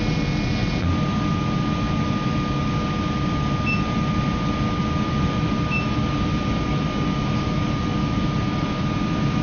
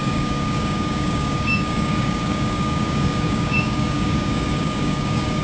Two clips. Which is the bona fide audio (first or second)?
first